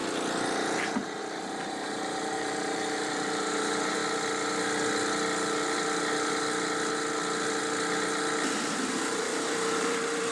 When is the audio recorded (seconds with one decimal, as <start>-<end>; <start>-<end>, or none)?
0.0-1.2; 4.0-9.2